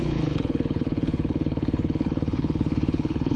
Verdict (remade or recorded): remade